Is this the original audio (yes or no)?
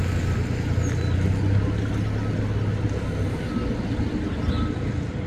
yes